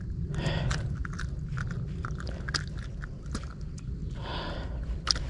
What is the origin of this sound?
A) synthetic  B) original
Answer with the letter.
B